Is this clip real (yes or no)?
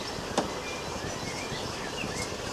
yes